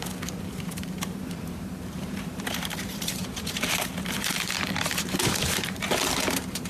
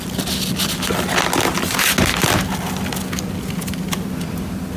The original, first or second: second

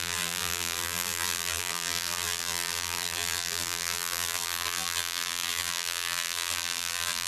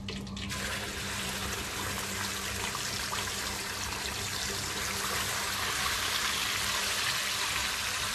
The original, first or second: second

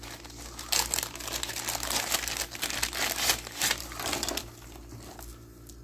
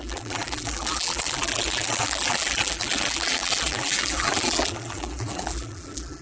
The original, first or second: first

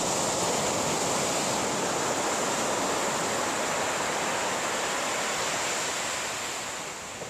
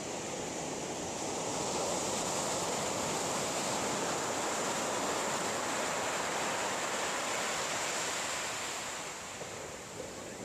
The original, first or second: first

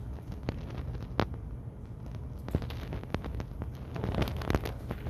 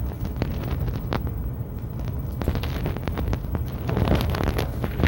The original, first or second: first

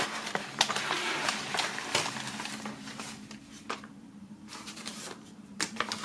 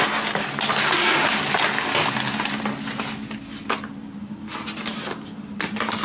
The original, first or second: second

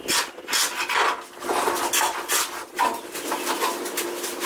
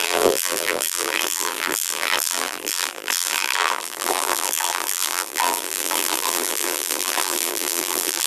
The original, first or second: first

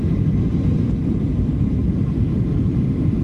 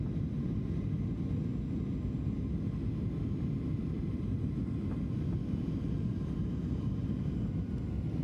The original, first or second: second